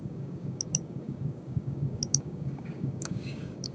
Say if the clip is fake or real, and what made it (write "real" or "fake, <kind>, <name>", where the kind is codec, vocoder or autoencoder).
fake, codec, DAC